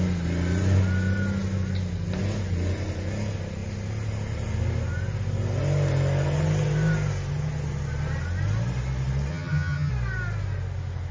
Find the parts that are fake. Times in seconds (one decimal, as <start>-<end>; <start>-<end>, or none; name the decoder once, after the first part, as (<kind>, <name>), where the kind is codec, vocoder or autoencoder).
9.3-9.9 (vocoder, HiFi-GAN)